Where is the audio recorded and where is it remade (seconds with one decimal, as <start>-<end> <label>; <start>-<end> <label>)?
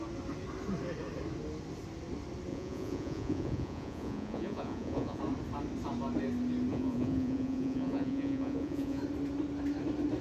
0.0-2.5 recorded; 2.5-5.2 remade; 5.2-6.7 recorded; 6.7-9.0 remade; 9.0-10.2 recorded